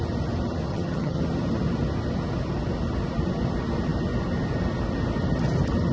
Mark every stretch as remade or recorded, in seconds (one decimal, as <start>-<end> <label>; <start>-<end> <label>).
0.0-0.7 recorded; 0.7-1.2 remade; 1.2-5.9 recorded